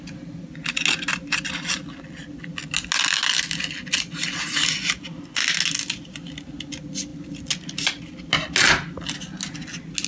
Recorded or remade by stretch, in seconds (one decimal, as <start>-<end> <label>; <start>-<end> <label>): 0.0-10.1 recorded